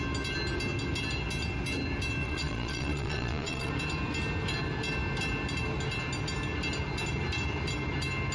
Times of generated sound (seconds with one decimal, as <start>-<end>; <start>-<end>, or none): 2.2-3.7